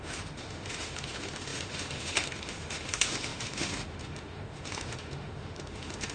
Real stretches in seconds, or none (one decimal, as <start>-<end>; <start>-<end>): none